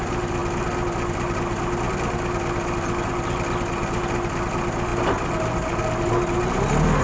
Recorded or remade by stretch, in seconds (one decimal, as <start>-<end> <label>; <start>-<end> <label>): 0.0-7.0 recorded